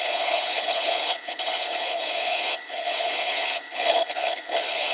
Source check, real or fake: fake